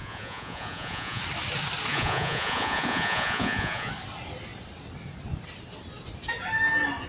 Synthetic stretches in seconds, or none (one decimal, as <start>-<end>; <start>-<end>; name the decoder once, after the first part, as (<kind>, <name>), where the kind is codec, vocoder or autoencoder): 0.0-1.2 (vocoder, Vocos); 1.9-3.9